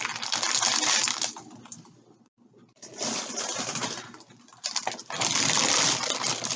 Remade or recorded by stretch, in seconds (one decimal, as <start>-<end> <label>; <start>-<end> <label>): 0.0-6.6 recorded